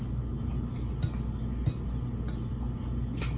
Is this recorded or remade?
recorded